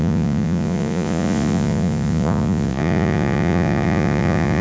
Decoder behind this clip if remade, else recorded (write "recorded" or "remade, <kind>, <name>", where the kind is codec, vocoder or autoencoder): remade, vocoder, Vocos